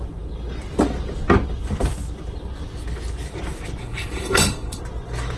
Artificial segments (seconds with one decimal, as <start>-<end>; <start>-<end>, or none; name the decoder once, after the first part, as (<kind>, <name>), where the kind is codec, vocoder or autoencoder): 3.8-4.8 (codec, HILCodec)

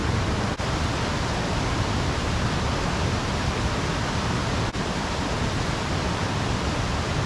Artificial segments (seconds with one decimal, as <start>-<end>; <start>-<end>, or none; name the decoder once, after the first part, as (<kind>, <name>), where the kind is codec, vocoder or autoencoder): none

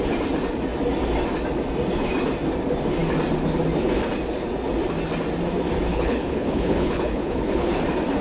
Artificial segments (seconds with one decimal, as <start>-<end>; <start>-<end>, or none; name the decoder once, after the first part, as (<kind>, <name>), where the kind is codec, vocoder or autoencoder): 5.9-7.7 (codec, HILCodec)

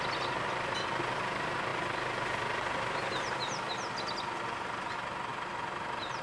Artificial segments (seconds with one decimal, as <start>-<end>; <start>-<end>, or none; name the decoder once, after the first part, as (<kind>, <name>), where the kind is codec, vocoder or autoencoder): none